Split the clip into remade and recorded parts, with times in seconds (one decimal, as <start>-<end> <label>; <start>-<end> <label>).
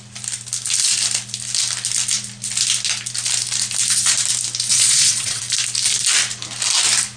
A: 0.0-4.7 recorded; 4.7-5.4 remade; 5.4-7.2 recorded